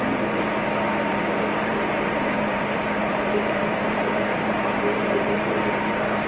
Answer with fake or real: fake